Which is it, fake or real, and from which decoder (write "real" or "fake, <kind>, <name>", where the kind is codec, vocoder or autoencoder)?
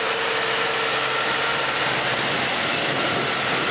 real